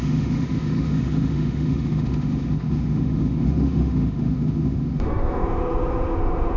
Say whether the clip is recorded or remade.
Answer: remade